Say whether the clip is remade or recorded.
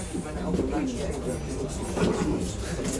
recorded